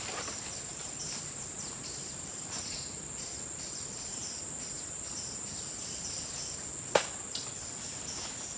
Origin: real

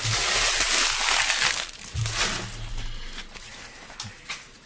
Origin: real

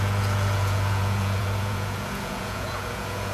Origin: fake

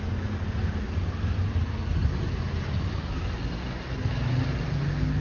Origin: real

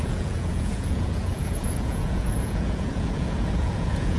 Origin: fake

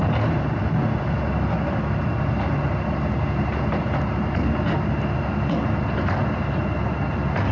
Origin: real